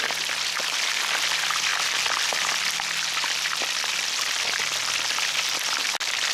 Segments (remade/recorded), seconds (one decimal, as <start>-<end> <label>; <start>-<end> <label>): 0.0-6.3 recorded